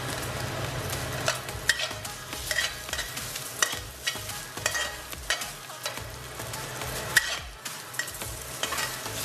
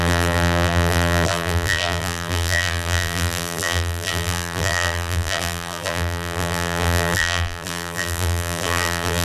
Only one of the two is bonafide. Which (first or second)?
first